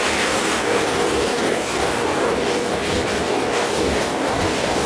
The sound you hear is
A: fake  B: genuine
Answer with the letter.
A